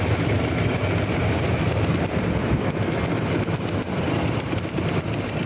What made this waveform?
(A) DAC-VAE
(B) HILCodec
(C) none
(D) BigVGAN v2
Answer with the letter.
C